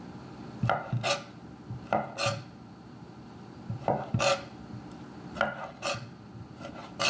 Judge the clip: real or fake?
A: real